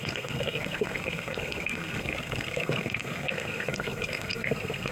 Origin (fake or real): fake